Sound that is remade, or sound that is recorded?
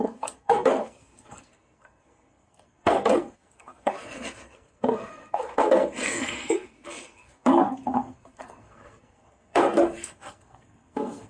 remade